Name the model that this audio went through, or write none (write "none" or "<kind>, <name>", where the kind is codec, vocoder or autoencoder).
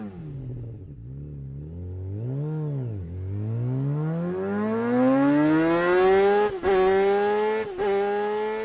none